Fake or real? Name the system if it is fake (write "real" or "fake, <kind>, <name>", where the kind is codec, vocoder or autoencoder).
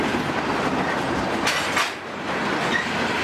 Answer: real